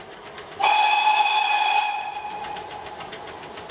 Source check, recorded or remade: recorded